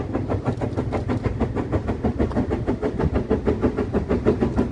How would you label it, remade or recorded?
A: recorded